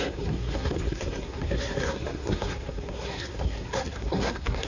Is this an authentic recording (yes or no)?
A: no